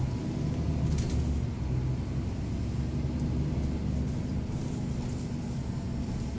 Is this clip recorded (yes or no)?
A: yes